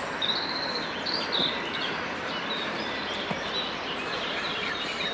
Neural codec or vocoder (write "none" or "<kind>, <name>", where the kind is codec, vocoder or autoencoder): none